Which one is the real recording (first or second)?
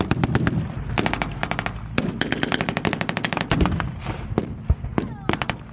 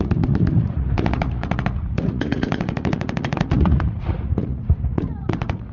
first